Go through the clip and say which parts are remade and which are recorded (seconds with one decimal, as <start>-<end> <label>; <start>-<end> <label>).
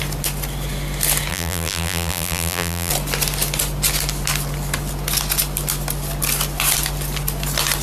0.0-1.3 recorded; 1.3-2.9 remade; 2.9-7.8 recorded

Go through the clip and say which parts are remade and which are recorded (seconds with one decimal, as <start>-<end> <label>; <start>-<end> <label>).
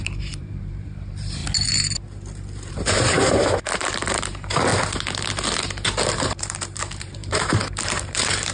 0.0-1.4 remade; 1.4-2.7 recorded; 2.7-4.7 remade; 4.7-6.1 recorded; 6.1-8.5 remade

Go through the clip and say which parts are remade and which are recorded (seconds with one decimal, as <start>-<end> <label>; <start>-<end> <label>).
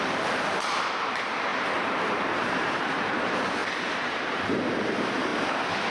0.0-3.6 remade; 3.6-4.8 recorded; 4.8-5.3 remade; 5.3-5.9 recorded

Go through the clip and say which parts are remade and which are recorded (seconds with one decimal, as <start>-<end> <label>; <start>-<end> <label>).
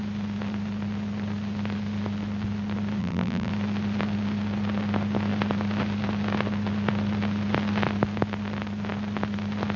0.0-3.0 recorded; 3.0-3.5 remade; 3.5-9.8 recorded